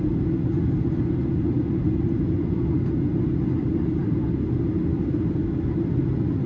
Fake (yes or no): no